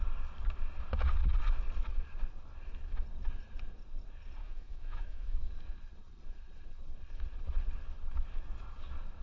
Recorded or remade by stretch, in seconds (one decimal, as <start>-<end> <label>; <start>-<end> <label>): 0.0-4.4 recorded; 4.4-5.5 remade; 5.5-9.2 recorded